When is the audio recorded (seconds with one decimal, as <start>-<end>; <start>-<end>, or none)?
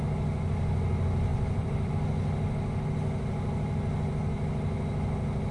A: 0.0-1.3; 1.9-5.5